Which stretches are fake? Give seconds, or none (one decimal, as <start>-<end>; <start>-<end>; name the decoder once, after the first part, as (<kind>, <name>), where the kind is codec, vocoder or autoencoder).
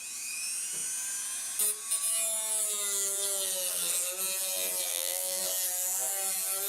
4.9-5.4 (vocoder, BigVGAN v2)